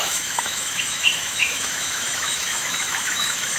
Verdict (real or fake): fake